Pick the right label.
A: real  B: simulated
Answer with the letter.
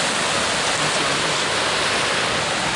A